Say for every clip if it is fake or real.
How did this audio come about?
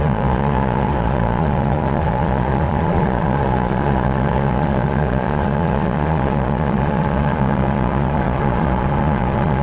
fake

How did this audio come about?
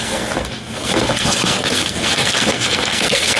fake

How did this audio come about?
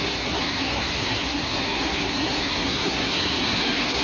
fake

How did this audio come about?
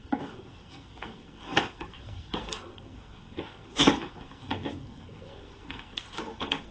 fake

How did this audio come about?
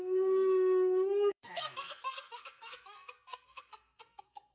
fake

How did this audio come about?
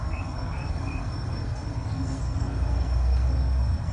fake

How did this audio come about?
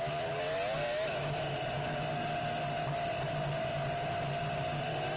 real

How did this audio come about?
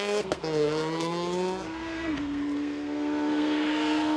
fake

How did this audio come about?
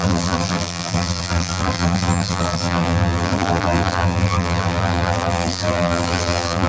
fake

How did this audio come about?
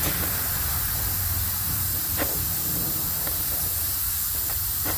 fake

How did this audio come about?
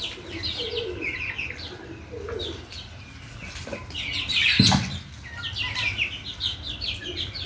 real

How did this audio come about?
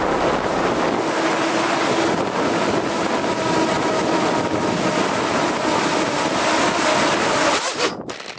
real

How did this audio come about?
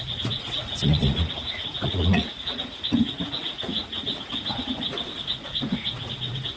fake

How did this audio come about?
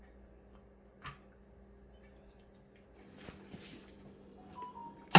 real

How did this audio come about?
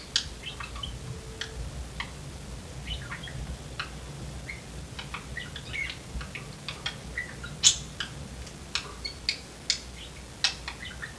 real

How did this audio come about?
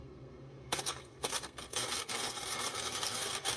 fake